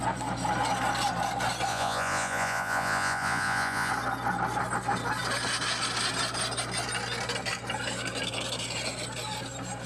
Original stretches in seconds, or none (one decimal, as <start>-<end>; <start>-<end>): 0.0-1.7; 3.9-9.9